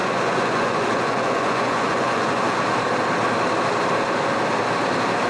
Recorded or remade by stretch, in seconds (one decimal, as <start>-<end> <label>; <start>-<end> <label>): 0.0-2.4 remade; 2.4-5.3 recorded

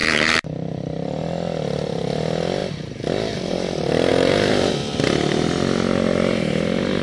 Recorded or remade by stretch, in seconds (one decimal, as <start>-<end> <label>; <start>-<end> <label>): 0.0-0.8 remade; 0.8-4.1 recorded; 4.1-4.7 remade; 4.7-7.0 recorded

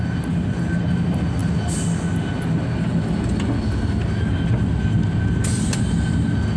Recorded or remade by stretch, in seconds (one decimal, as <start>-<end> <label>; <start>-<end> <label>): 0.0-6.6 recorded